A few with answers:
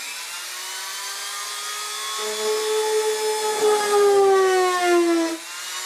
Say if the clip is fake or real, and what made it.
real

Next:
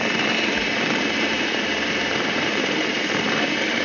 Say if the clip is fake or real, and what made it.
fake, vocoder, BigVGAN v2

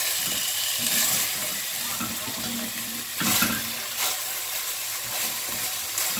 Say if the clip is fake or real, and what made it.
fake, vocoder, BigVGAN v2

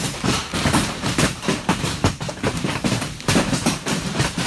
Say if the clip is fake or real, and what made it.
fake, vocoder, BigVGAN v2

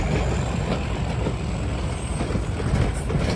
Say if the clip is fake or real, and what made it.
real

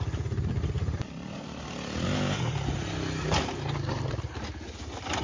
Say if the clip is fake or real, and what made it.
real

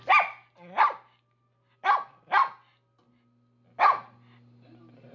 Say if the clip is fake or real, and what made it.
real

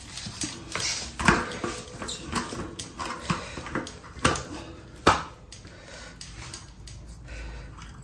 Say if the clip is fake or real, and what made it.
real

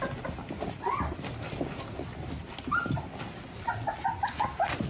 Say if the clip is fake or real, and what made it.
fake, vocoder, BigVGAN v2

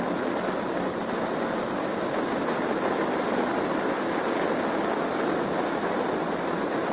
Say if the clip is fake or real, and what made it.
real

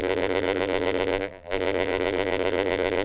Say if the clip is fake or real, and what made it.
fake, vocoder, BigVGAN v2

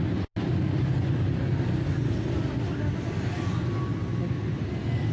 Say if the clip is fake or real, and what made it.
real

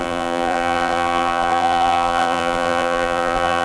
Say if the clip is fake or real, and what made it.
fake, vocoder, BigVGAN v2